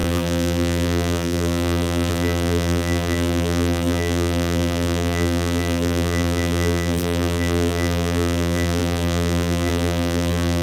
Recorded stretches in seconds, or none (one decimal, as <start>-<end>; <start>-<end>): none

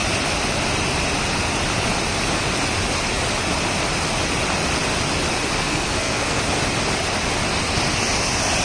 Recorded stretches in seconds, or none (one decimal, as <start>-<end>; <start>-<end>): 0.0-5.6; 6.4-8.6

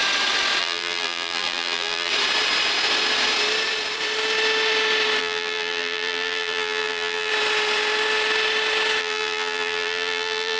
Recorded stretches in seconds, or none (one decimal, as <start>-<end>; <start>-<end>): 0.0-0.6; 2.1-5.2; 7.3-9.0

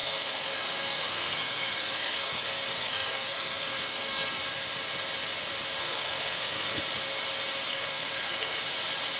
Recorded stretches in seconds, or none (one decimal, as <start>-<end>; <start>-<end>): 2.4-2.8; 4.4-5.8; 6.8-7.7; 8.6-9.2